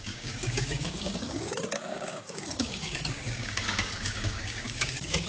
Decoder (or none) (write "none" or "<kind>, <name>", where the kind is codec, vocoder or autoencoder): codec, DAC